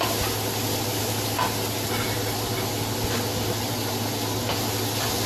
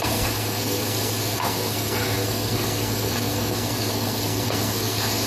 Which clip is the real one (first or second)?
first